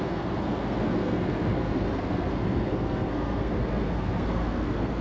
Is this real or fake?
fake